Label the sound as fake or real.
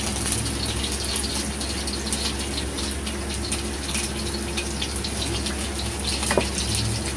real